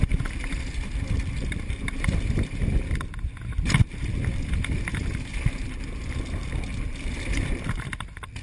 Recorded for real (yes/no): yes